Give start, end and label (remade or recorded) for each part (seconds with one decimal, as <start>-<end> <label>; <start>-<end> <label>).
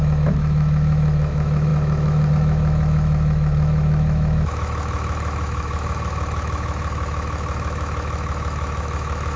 0.0-9.4 remade